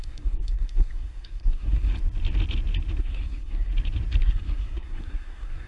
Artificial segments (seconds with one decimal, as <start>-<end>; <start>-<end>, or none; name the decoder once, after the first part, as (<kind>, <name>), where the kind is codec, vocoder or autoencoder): 0.0-1.9 (codec, SNAC); 3.0-3.7; 4.2-5.7